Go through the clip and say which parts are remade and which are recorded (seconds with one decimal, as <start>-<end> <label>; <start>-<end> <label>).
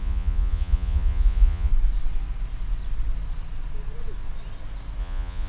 0.0-1.7 remade; 1.7-5.0 recorded; 5.0-5.5 remade